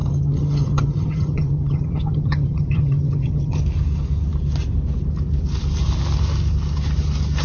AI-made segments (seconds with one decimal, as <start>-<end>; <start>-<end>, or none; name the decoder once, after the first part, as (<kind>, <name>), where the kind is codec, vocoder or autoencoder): 0.0-3.6 (vocoder, HiFi-GAN)